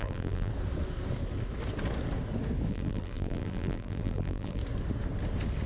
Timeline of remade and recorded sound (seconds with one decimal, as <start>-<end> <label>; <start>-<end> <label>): 0.0-0.5 remade; 0.5-2.7 recorded; 2.7-4.6 remade; 4.6-5.7 recorded